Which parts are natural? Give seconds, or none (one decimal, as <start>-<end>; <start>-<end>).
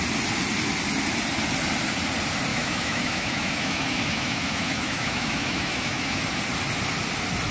0.0-2.5; 6.2-7.5